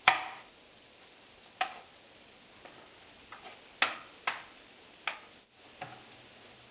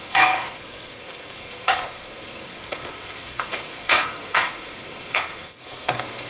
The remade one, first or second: second